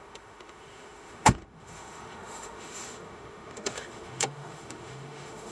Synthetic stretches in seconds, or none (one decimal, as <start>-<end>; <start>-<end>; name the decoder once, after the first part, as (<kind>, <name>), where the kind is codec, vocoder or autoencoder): 0.0-5.5 (autoencoder, DAC-VAE)